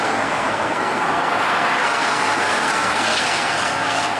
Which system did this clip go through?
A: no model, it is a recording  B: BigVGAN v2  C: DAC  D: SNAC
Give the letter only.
D